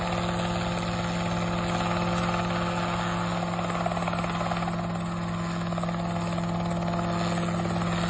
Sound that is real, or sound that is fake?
real